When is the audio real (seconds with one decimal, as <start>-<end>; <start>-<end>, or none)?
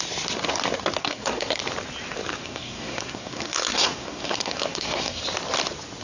0.0-1.0; 1.6-2.3; 5.2-6.0